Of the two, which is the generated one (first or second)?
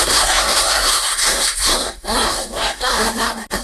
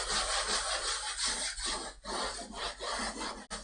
first